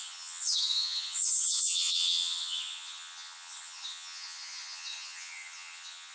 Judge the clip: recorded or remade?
remade